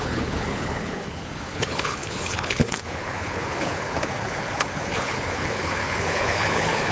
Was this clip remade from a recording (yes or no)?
yes